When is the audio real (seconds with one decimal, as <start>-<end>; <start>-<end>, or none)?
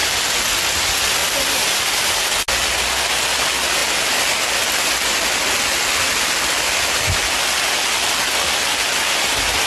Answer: 0.0-9.7